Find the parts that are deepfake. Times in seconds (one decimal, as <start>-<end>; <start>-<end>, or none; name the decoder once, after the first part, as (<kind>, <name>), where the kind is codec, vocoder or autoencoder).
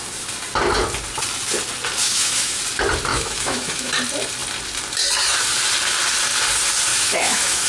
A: 2.0-2.6 (autoencoder, DAC-VAE); 3.1-3.9; 6.9-7.7